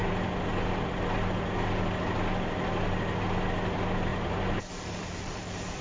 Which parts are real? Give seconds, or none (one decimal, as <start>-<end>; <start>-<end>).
0.0-4.1